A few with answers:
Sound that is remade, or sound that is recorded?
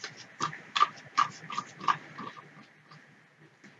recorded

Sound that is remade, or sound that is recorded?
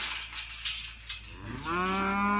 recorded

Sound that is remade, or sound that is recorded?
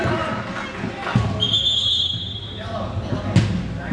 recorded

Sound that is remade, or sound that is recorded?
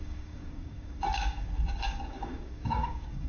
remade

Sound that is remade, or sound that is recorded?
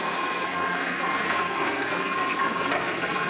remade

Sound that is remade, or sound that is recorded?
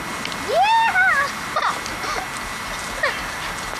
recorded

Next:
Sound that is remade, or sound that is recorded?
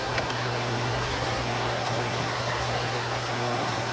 remade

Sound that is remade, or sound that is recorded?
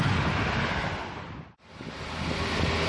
recorded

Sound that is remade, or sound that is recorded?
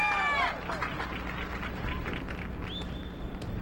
recorded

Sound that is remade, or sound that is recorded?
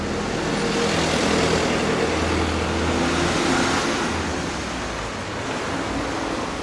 recorded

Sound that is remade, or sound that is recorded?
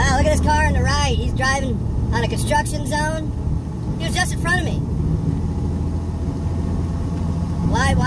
recorded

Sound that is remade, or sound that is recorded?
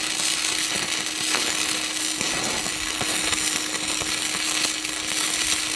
recorded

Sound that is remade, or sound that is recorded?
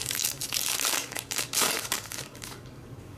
remade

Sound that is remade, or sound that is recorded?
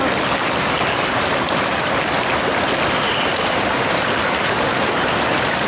recorded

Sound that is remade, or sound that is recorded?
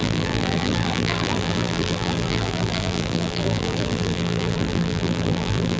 remade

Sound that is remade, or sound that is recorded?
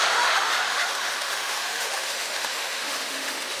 remade